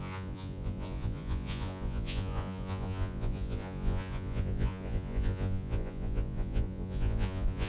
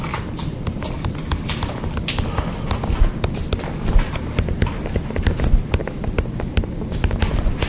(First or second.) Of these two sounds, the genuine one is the second